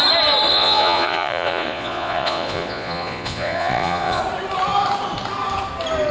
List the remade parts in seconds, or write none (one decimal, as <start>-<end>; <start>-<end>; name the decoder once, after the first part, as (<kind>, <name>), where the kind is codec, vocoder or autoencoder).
0.5-4.2 (vocoder, Vocos)

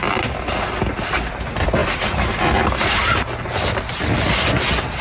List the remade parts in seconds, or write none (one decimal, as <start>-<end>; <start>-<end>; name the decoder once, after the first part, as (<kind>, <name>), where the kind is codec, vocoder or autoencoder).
none

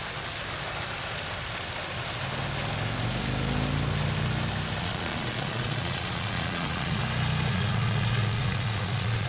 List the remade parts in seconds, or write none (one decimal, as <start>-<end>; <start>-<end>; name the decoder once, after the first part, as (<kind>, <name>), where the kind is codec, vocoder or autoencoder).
4.8-7.0 (vocoder, Vocos); 7.5-9.3

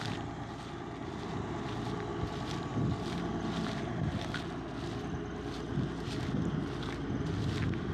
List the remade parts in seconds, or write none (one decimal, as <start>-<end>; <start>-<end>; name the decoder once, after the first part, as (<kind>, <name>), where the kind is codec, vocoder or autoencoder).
none

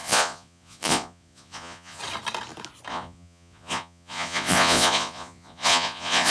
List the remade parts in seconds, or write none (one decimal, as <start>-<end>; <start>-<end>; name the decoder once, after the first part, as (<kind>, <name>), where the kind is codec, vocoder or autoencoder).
0.0-2.0 (vocoder, Vocos); 2.9-6.3

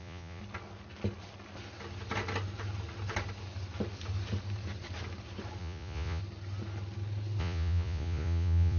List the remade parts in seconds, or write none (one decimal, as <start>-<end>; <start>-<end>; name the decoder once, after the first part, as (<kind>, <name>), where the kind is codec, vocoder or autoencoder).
0.0-0.4 (vocoder, Vocos); 5.6-6.2; 7.4-8.8